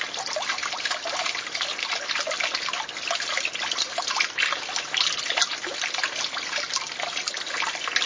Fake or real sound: real